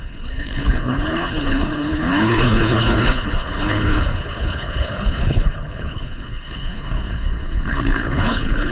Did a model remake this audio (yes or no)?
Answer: yes